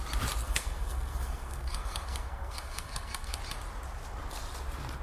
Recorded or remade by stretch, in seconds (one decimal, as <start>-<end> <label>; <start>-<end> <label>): 0.0-0.4 recorded; 0.4-3.4 remade; 3.4-5.0 recorded